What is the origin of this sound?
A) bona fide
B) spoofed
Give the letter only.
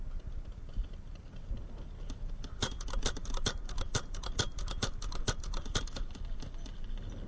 A